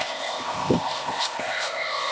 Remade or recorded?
remade